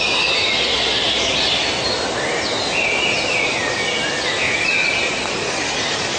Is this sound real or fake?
real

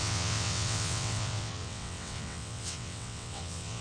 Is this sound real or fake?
fake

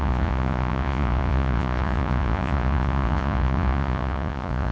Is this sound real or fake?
fake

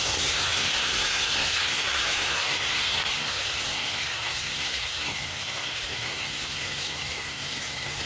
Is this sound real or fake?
fake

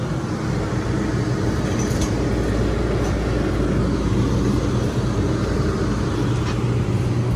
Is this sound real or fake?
real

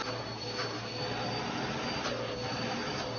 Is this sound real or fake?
real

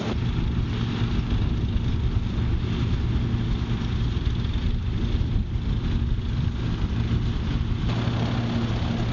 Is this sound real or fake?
real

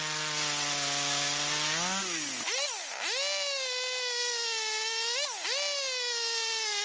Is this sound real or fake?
real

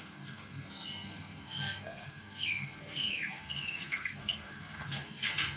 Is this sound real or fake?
fake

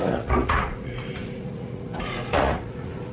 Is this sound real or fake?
fake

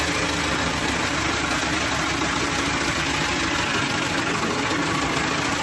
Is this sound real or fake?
real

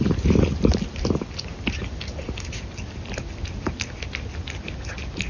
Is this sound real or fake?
real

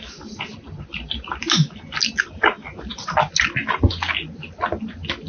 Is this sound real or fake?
real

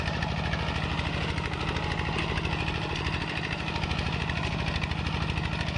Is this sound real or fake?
real